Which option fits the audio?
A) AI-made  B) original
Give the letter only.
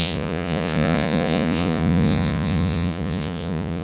A